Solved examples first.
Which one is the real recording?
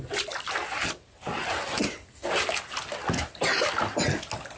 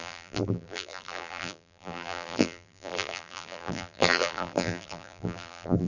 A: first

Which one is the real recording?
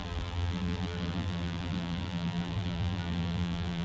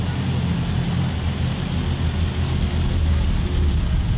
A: second